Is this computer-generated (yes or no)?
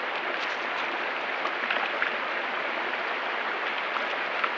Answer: no